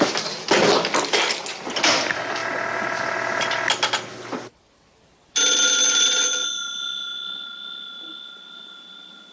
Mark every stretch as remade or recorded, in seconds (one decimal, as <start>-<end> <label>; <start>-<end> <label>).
0.0-9.3 recorded